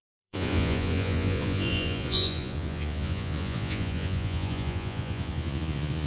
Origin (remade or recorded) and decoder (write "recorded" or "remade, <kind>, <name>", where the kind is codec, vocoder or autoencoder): remade, vocoder, Vocos